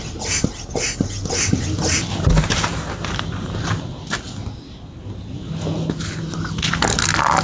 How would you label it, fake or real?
real